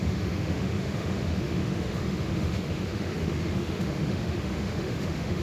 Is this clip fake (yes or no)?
yes